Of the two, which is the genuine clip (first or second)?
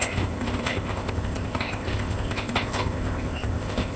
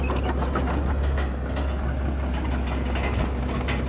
second